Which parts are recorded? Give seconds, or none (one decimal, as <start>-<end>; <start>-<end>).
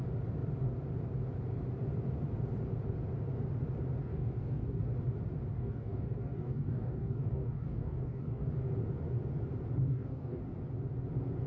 0.0-4.0; 4.8-5.5; 8.5-9.9; 10.4-11.5